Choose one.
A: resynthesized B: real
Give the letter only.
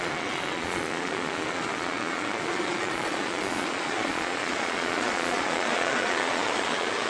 A